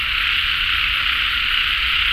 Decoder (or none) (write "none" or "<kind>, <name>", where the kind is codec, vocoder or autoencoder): none